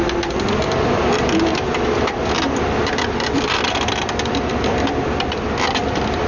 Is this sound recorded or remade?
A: recorded